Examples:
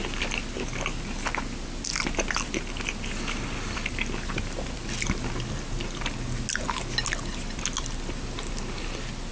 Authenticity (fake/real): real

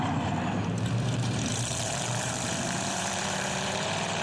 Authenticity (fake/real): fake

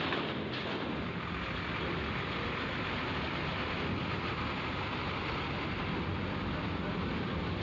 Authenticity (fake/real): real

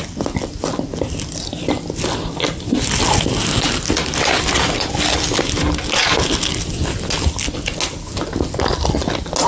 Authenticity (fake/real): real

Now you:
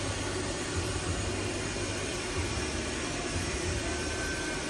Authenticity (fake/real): real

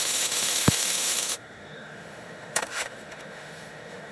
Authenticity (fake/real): fake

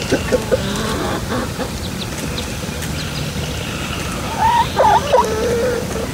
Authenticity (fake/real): real